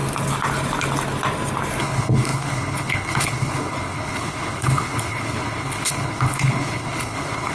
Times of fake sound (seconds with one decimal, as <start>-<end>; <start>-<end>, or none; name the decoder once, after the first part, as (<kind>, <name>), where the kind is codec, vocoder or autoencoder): 1.8-7.5 (codec, HILCodec)